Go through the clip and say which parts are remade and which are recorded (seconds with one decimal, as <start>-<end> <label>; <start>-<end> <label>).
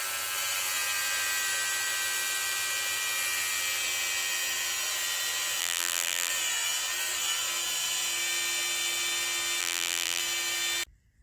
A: 0.0-5.6 recorded; 5.6-6.3 remade; 6.3-9.6 recorded; 9.6-10.2 remade; 10.2-11.2 recorded